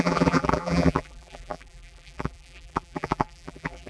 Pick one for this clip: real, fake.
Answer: fake